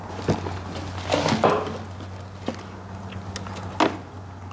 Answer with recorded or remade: recorded